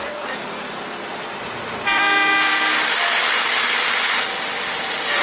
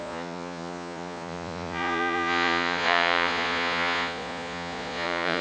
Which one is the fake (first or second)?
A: second